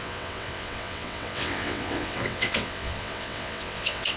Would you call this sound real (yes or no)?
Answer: no